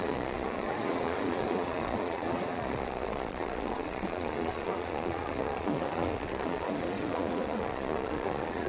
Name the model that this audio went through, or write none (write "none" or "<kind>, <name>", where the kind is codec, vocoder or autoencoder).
vocoder, Vocos